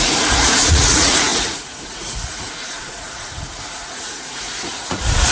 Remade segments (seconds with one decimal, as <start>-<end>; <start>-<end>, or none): 0.0-5.3